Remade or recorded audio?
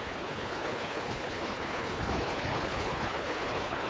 remade